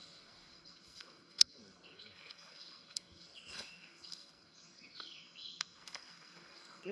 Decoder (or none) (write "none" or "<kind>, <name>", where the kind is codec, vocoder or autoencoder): codec, SNAC